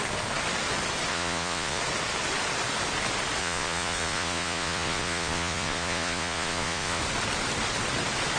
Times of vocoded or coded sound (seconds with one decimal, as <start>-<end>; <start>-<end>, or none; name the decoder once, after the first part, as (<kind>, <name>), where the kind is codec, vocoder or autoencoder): 1.1-1.8 (vocoder, Vocos); 3.4-7.0